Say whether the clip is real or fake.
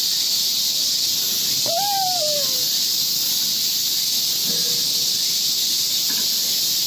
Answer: real